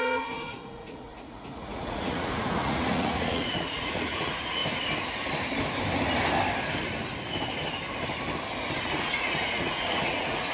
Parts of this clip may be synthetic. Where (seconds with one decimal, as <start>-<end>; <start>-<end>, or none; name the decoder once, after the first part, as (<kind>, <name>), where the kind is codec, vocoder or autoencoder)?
0.0-4.6 (vocoder, Vocos); 8.8-10.5